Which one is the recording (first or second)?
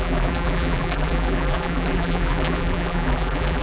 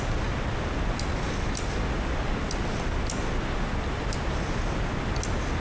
second